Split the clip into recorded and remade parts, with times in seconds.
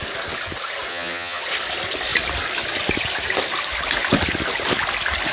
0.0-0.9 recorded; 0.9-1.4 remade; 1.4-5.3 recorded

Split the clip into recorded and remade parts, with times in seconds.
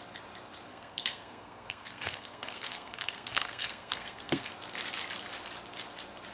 0.0-0.7 recorded; 0.7-4.5 remade; 4.5-6.3 recorded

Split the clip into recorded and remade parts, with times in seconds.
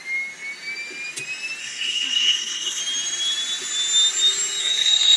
0.0-1.6 recorded; 1.6-2.8 remade; 2.8-4.6 recorded; 4.6-5.2 remade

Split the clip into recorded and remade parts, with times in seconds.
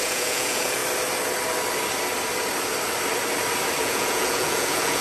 0.0-0.8 remade; 0.8-3.8 recorded; 3.8-5.0 remade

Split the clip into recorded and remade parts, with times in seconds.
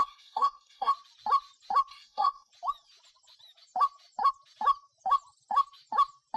0.0-0.9 remade; 0.9-1.9 recorded; 1.9-2.5 remade; 2.5-6.4 recorded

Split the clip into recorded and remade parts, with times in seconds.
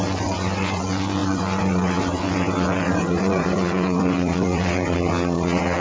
0.0-5.8 remade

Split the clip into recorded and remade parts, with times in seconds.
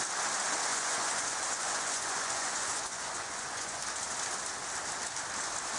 0.0-0.7 recorded; 0.7-3.8 remade; 3.8-5.8 recorded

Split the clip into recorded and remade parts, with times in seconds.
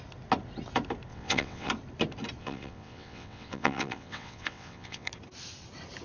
0.0-1.1 recorded; 1.1-1.7 remade; 1.7-2.4 recorded; 2.4-5.1 remade; 5.1-6.0 recorded